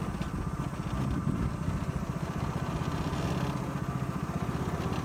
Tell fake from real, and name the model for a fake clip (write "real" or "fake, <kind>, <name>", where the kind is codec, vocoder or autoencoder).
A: real